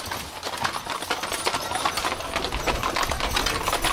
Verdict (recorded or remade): recorded